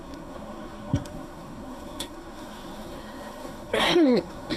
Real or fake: fake